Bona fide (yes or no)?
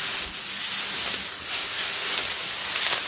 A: yes